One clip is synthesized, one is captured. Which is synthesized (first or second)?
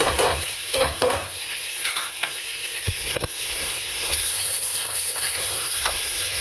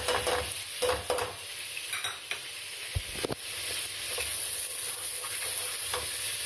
first